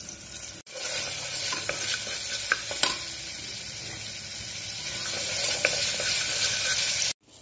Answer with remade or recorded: recorded